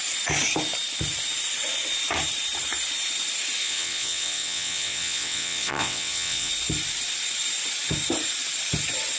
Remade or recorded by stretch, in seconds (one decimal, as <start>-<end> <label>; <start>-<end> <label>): 0.0-3.6 recorded; 3.6-6.5 remade; 6.5-9.2 recorded